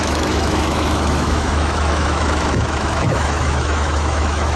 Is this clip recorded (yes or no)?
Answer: no